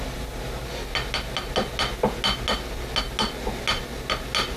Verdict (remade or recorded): recorded